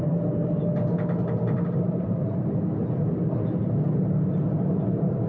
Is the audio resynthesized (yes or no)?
no